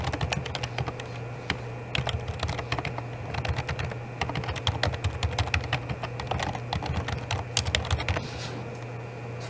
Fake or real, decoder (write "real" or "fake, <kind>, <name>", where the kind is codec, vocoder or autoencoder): real